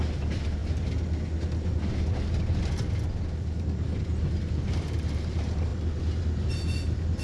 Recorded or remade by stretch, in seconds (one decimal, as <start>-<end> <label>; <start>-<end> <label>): 0.0-0.6 remade; 0.6-4.5 recorded; 4.5-5.7 remade; 5.7-6.5 recorded; 6.5-7.2 remade